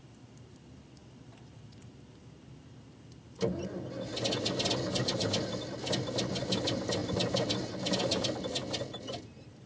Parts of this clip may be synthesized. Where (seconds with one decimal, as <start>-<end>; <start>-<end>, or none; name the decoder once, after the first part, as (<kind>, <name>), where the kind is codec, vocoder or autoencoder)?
none